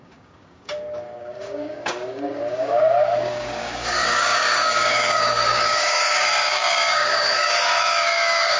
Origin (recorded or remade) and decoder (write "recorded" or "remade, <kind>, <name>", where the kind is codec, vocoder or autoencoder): remade, codec, DAC